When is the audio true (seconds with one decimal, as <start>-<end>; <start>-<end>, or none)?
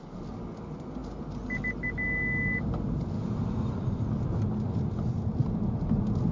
0.0-6.3